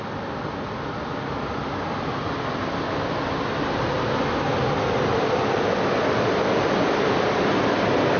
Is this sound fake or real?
real